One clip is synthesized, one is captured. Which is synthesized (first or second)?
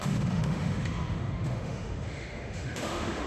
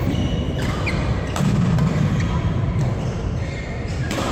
first